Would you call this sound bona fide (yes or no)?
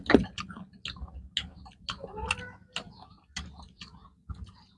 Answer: yes